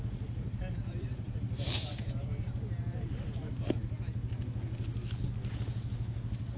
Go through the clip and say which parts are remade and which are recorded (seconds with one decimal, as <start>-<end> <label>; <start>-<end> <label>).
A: 0.0-0.8 recorded; 0.8-3.5 remade; 3.5-6.6 recorded